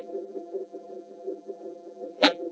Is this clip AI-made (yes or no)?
yes